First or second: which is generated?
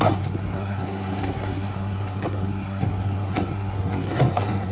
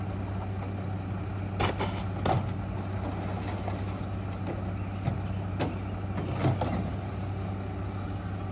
first